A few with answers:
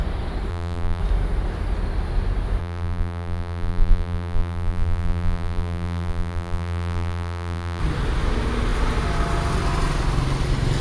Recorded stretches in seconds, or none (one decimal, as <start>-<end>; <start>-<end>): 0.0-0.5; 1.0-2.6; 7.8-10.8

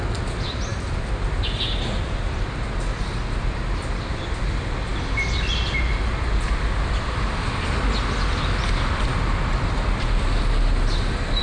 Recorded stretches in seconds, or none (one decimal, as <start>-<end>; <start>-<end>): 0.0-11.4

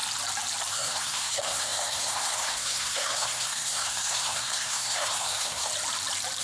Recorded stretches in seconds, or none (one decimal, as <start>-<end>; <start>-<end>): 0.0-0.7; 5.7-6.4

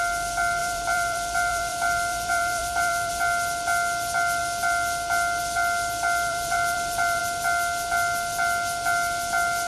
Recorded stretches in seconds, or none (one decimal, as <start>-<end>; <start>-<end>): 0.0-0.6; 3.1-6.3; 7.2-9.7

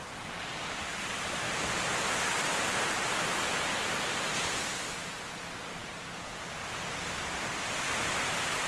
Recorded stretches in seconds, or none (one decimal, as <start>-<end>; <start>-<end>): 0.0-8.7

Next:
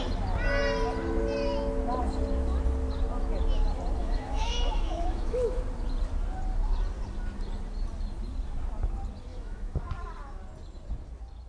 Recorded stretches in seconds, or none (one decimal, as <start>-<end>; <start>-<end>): 0.0-4.0; 5.6-9.3; 9.8-11.5

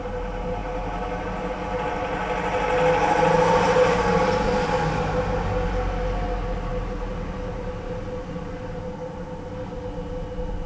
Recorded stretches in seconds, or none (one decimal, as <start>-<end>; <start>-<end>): 0.0-10.7

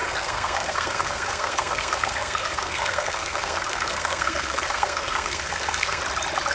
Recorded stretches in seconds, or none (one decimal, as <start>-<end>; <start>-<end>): 6.0-6.5